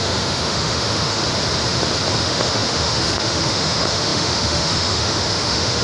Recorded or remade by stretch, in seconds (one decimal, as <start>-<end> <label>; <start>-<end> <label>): 0.0-1.2 remade; 1.2-2.2 recorded; 2.2-5.8 remade